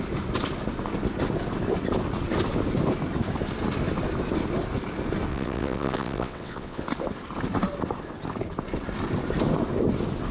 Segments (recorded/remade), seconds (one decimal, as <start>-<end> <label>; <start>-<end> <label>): 0.0-5.3 recorded; 5.3-6.8 remade; 6.8-10.3 recorded